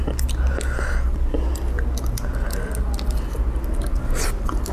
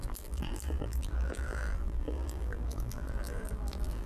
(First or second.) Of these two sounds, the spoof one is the second